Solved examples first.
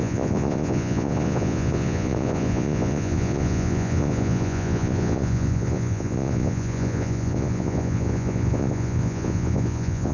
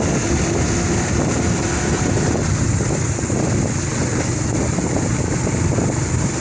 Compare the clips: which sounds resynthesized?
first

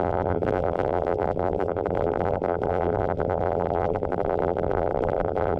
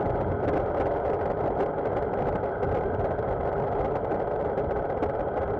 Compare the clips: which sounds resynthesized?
first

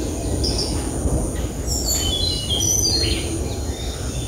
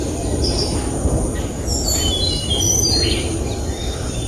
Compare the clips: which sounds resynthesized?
second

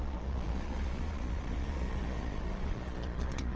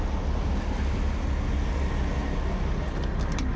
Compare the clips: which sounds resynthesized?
first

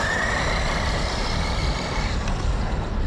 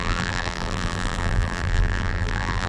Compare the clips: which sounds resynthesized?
second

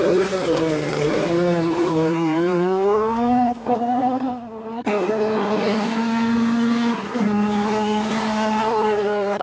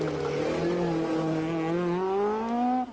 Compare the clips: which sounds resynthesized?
first